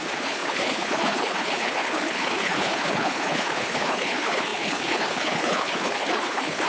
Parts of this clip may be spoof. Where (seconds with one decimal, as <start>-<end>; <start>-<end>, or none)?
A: 0.0-6.7